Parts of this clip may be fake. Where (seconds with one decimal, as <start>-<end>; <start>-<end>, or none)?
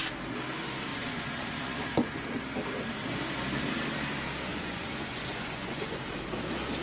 0.9-2.3; 4.5-6.0